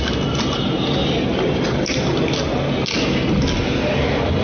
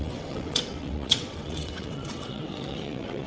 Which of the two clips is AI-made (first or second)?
second